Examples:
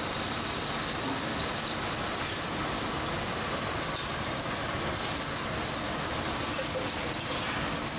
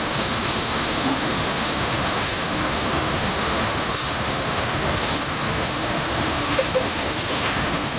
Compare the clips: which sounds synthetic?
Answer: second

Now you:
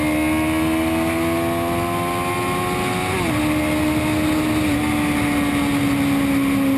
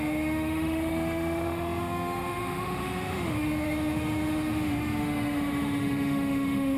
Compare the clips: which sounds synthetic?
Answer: second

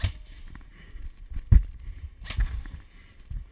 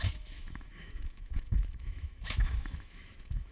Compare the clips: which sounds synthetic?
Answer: second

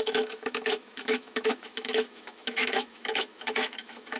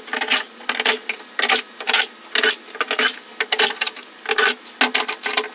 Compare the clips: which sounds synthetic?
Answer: first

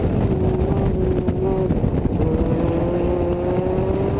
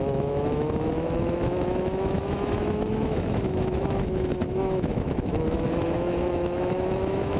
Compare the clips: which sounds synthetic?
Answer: second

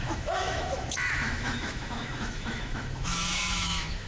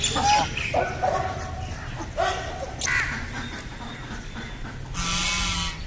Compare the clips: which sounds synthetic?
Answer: first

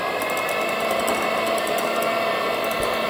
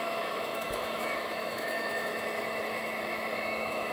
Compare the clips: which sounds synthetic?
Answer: second